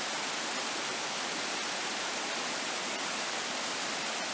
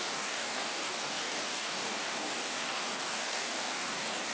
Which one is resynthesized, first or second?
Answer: second